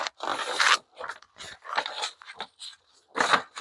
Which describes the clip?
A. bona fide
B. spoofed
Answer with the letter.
A